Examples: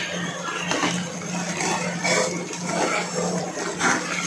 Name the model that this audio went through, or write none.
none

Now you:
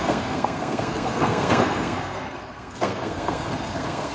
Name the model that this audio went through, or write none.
codec, SNAC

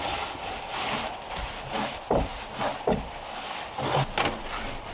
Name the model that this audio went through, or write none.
none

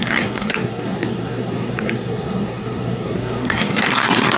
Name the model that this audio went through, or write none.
codec, SNAC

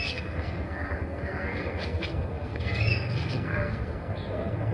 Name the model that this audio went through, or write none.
codec, SNAC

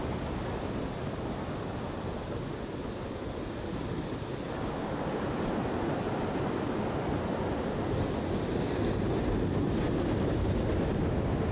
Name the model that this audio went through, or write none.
none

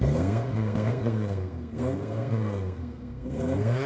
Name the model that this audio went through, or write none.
codec, SNAC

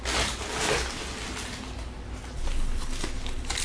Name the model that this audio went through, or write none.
none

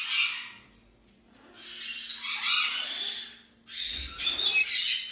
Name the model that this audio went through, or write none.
none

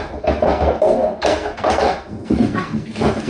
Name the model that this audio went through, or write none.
codec, SNAC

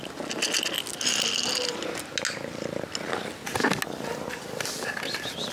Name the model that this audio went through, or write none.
none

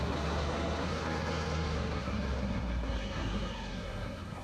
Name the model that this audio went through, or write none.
codec, SNAC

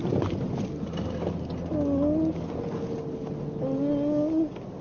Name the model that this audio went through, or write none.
none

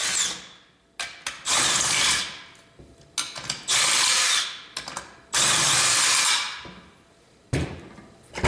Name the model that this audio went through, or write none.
none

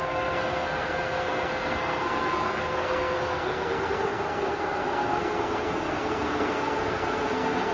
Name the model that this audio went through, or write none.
codec, SNAC